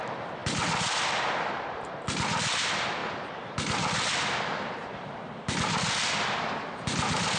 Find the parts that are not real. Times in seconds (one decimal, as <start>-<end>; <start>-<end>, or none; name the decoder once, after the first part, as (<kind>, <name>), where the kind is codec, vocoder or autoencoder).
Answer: none